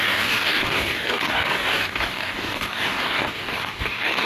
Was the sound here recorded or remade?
remade